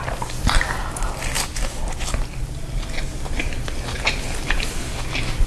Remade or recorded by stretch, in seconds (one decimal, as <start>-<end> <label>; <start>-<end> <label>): 0.0-1.0 remade; 1.0-3.4 recorded; 3.4-5.5 remade